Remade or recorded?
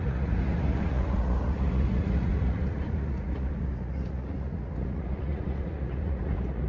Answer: remade